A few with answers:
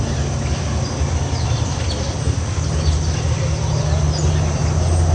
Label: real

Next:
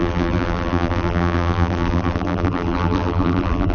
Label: fake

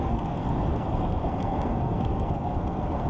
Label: fake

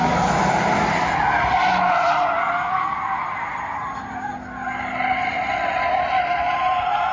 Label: real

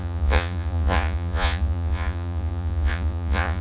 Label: fake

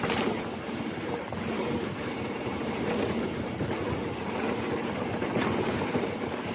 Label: fake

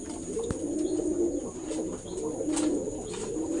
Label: real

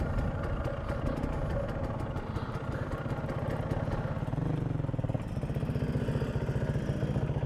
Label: real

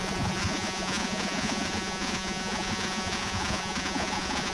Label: fake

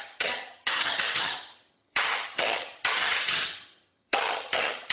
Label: fake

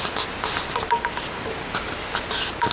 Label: real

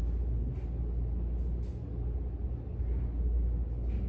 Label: real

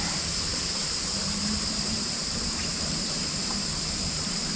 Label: fake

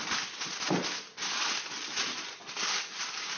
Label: real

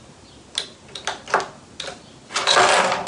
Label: real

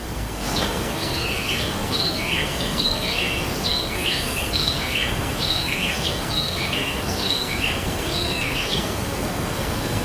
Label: fake